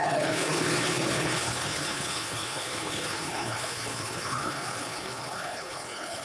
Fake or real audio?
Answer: fake